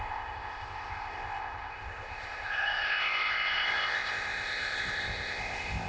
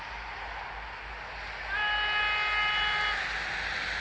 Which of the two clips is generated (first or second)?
first